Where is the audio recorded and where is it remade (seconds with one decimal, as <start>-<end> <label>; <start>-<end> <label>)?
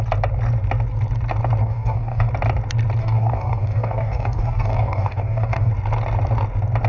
0.0-1.6 recorded; 1.6-2.3 remade; 2.3-3.0 recorded; 3.0-5.7 remade; 5.7-6.9 recorded